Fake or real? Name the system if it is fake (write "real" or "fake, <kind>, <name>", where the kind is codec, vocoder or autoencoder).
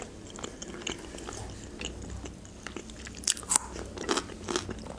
real